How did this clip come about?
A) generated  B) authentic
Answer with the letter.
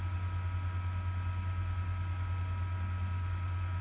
B